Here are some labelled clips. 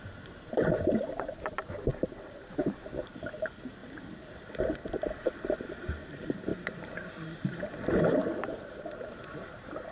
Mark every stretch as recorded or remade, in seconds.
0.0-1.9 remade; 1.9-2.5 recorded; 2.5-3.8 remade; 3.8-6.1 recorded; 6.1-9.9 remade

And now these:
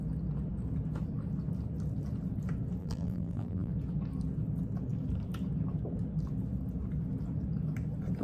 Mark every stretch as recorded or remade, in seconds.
0.0-2.8 recorded; 2.8-3.7 remade; 3.7-8.2 recorded

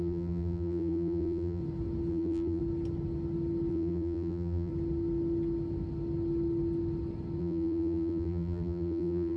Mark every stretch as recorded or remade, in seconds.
0.0-1.6 remade; 1.6-2.1 recorded; 2.1-2.6 remade; 2.6-3.7 recorded; 3.7-4.7 remade; 4.7-7.4 recorded; 7.4-9.4 remade

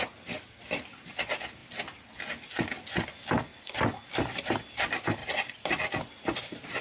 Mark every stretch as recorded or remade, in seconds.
0.0-3.5 recorded; 3.5-4.6 remade; 4.6-5.2 recorded; 5.2-5.7 remade; 5.7-6.8 recorded

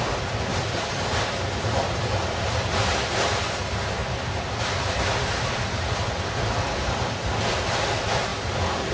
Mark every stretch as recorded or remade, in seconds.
0.0-8.9 remade

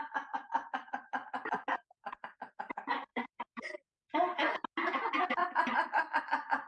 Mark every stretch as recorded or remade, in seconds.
0.0-3.1 recorded; 3.1-4.5 remade; 4.5-5.4 recorded; 5.4-6.2 remade; 6.2-6.7 recorded